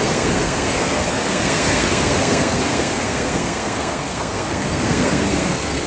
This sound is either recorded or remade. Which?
remade